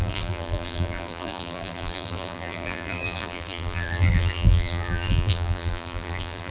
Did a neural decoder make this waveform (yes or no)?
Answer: yes